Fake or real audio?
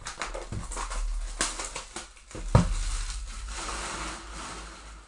real